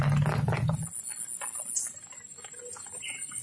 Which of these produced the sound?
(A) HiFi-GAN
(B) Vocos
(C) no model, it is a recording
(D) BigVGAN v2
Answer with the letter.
C